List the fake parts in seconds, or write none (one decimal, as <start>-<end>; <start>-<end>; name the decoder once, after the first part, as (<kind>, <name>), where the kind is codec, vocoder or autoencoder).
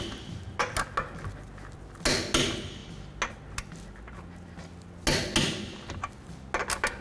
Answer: none